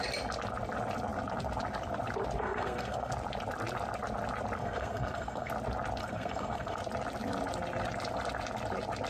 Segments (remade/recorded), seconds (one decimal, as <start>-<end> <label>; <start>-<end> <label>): 0.0-2.4 recorded; 2.4-3.1 remade; 3.1-4.6 recorded; 4.6-5.5 remade; 5.5-6.0 recorded; 6.0-6.8 remade; 6.8-9.1 recorded